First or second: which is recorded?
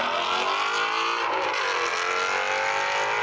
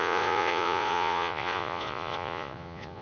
first